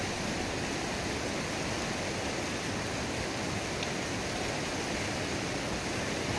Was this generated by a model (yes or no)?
no